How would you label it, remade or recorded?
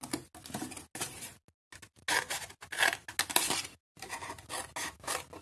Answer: recorded